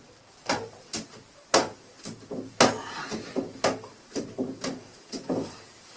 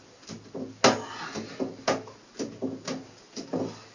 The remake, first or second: first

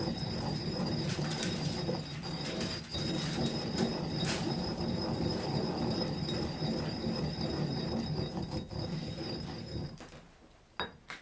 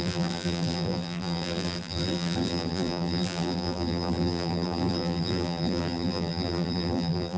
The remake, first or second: second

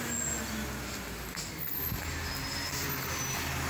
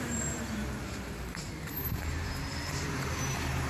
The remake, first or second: second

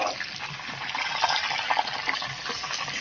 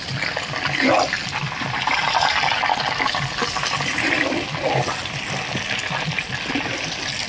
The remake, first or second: second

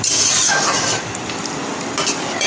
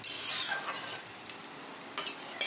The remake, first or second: first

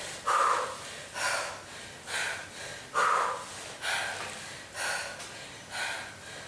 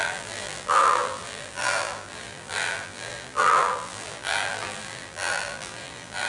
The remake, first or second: second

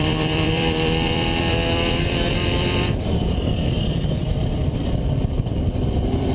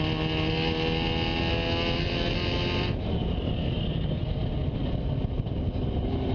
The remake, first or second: first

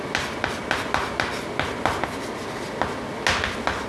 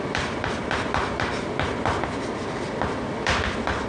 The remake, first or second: second